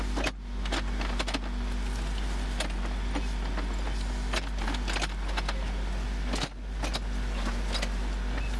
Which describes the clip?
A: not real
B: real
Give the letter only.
B